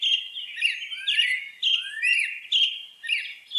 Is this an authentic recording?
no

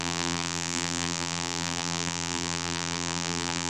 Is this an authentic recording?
no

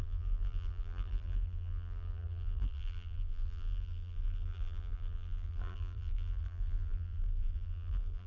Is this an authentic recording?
no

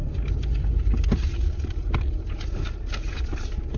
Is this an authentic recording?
yes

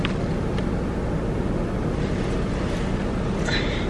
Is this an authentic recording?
yes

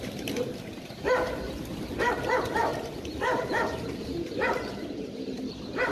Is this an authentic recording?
no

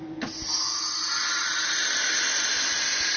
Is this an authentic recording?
yes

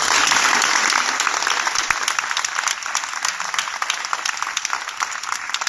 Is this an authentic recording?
yes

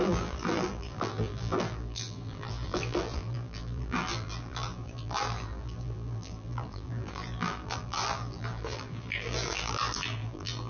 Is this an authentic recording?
no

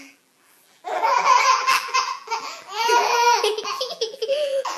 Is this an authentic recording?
no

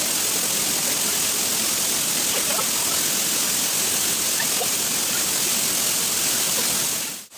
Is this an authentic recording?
yes